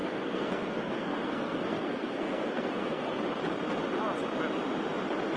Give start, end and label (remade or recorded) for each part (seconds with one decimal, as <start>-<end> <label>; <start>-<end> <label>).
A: 0.0-3.2 remade; 3.2-5.4 recorded